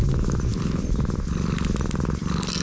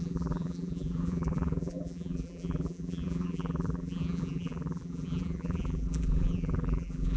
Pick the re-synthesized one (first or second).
second